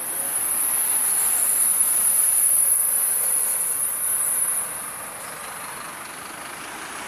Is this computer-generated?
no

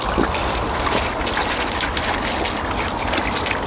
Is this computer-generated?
no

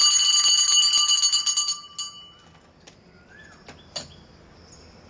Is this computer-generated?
no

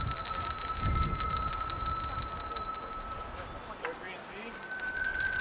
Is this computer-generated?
no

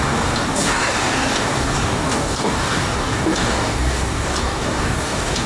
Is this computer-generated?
yes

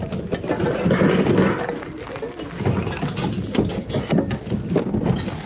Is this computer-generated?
no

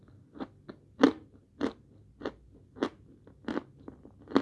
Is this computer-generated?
no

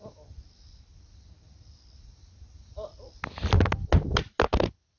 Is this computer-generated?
no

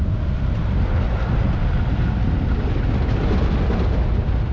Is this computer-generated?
no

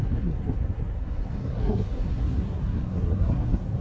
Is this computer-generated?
yes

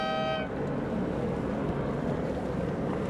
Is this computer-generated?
no